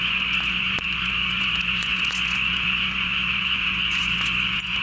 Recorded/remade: remade